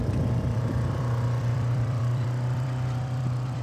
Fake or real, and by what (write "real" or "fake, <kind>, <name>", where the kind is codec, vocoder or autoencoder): fake, vocoder, BigVGAN v2